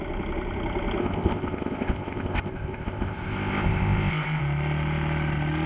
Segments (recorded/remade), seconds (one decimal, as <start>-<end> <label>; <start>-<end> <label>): 0.0-1.0 recorded; 1.0-4.4 remade; 4.4-5.7 recorded